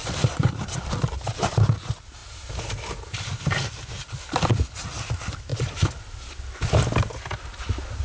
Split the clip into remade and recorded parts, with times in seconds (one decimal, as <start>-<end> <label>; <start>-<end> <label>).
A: 0.0-0.9 remade; 0.9-8.0 recorded

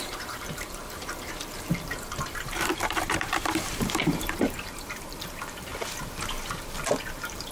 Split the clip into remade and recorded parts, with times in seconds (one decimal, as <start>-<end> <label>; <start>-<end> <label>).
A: 0.0-5.7 remade; 5.7-7.1 recorded; 7.1-7.5 remade

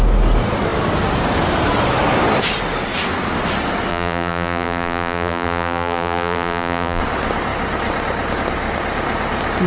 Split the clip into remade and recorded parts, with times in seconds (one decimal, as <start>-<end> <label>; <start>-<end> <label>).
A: 0.0-3.9 recorded; 3.9-7.0 remade; 7.0-9.7 recorded

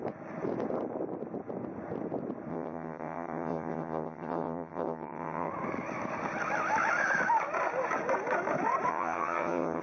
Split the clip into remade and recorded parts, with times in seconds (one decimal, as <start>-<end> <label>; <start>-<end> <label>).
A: 0.0-2.5 recorded; 2.5-5.5 remade; 5.5-8.9 recorded; 8.9-9.8 remade

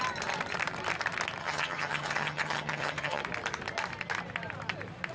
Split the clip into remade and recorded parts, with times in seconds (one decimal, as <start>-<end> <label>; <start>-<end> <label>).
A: 0.0-1.4 recorded; 1.4-3.2 remade; 3.2-5.1 recorded

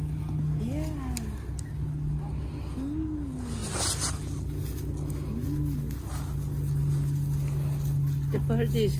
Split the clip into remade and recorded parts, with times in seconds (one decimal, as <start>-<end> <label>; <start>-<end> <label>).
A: 0.0-9.0 recorded